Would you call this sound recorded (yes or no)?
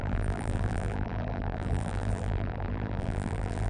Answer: no